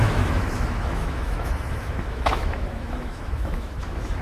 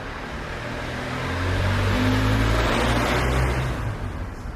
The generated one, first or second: first